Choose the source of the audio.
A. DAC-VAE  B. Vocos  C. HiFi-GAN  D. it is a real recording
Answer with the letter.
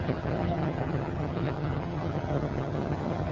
C